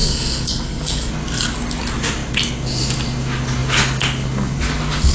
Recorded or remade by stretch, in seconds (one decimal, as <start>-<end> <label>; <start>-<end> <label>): 0.0-1.1 remade; 1.1-5.1 recorded